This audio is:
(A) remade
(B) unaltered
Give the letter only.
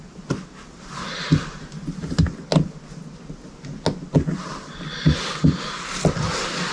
B